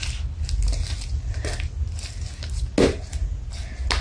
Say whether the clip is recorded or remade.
recorded